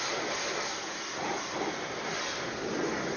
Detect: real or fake real